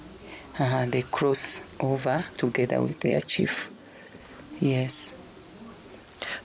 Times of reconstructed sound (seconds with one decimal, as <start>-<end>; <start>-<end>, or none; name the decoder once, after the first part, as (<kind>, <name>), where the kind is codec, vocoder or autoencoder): 2.9-4.2 (vocoder, HiFi-GAN)